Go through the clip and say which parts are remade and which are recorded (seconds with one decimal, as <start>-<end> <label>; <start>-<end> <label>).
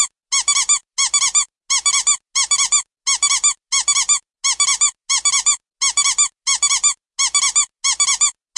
0.0-8.6 recorded